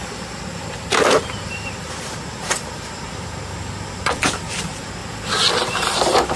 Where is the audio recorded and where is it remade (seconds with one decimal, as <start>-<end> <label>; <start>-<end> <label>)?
0.0-1.2 recorded; 1.2-5.0 remade; 5.0-5.5 recorded; 5.5-6.4 remade